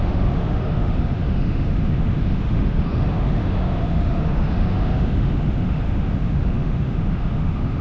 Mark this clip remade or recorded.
remade